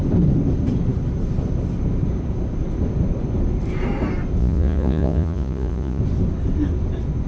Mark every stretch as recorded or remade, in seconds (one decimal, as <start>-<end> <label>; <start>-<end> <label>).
0.0-4.4 recorded; 4.4-6.0 remade; 6.0-7.3 recorded